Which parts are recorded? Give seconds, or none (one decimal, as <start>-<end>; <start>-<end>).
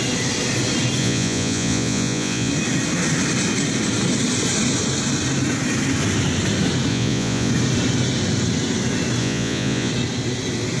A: 0.0-1.0; 2.5-6.9; 7.5-9.2; 9.9-10.8